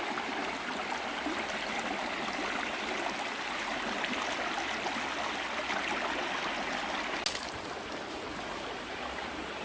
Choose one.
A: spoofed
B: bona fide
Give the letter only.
B